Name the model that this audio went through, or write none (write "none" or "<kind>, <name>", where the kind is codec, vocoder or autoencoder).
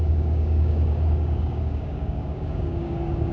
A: codec, DAC